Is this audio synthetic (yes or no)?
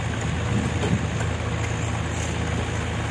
no